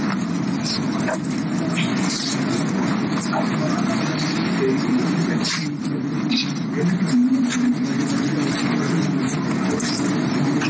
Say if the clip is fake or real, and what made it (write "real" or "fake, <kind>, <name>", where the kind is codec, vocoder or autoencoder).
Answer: real